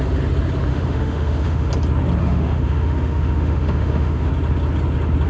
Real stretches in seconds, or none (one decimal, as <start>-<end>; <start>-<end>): 0.0-0.7; 1.7-2.2; 4.3-5.3